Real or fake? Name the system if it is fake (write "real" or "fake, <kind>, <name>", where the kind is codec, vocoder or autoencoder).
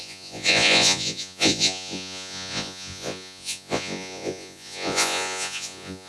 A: fake, vocoder, Vocos